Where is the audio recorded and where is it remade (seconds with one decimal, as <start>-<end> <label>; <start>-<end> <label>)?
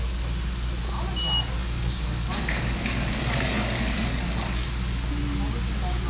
0.0-1.6 recorded; 1.6-5.1 remade; 5.1-6.1 recorded